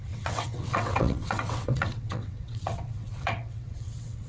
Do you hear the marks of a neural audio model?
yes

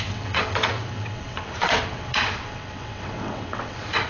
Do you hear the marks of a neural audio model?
yes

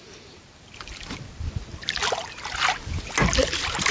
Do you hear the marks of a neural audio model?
no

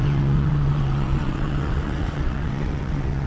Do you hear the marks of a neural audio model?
yes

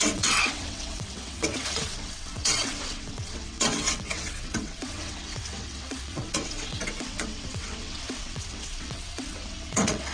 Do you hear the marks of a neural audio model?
yes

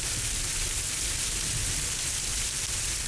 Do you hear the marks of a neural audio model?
no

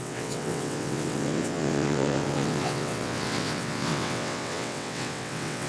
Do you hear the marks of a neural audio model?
yes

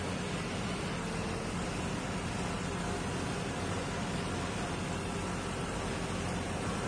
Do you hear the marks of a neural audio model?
no